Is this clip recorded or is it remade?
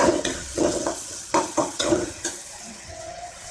remade